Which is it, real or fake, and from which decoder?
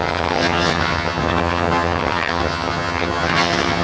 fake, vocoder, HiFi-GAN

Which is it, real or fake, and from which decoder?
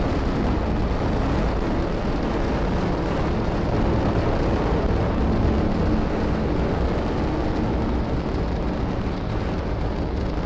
real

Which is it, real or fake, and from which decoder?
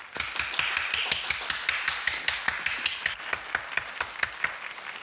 real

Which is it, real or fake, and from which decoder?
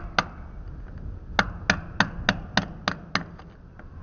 real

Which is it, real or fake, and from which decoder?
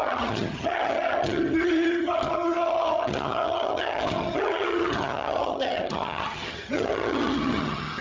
fake, vocoder, HiFi-GAN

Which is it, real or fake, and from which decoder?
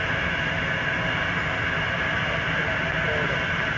real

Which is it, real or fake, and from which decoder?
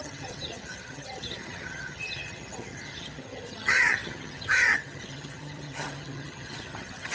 fake, vocoder, HiFi-GAN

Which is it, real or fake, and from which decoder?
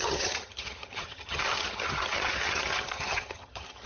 fake, vocoder, HiFi-GAN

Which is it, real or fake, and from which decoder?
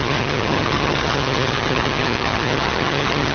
fake, vocoder, HiFi-GAN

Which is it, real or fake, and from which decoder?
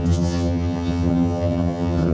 fake, vocoder, HiFi-GAN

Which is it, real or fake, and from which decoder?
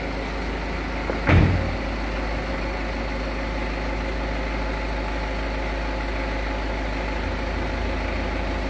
real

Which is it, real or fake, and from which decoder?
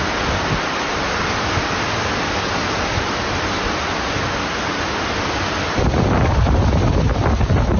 real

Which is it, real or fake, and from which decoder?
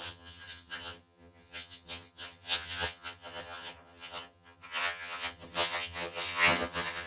fake, vocoder, HiFi-GAN